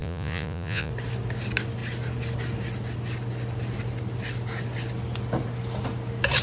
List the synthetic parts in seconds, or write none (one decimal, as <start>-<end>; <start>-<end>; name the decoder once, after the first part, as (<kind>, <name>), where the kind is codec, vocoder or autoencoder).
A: 0.0-0.9 (vocoder, Vocos)